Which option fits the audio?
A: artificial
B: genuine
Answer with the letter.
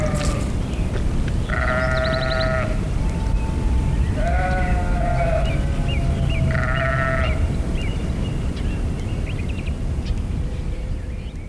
B